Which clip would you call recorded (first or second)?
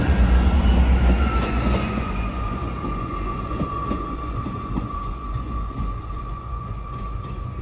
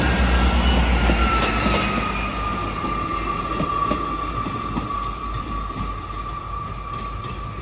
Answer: second